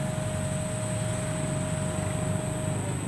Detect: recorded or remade recorded